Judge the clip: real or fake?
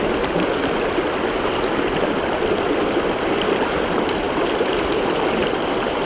real